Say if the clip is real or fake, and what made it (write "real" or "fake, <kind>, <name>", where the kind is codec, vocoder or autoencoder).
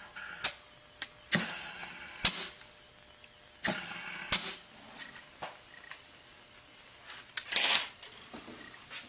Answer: real